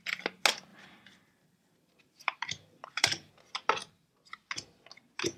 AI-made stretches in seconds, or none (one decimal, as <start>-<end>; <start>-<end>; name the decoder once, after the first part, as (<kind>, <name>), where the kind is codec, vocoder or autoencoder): 0.7-3.3 (vocoder, BigVGAN v2); 3.8-4.3